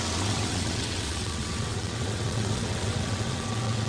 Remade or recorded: remade